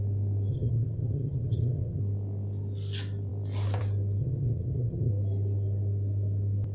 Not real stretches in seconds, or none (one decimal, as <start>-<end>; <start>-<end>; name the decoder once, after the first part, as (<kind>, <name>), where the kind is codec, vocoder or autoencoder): 0.5-2.0 (vocoder, HiFi-GAN); 4.2-5.1